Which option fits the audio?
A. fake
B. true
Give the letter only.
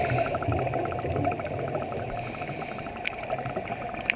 B